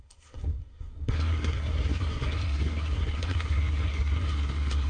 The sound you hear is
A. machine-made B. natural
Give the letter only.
A